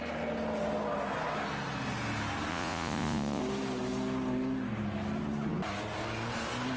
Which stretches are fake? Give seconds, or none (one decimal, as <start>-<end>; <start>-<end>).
2.5-3.4